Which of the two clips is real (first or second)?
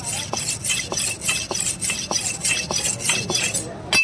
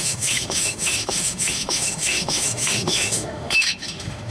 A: first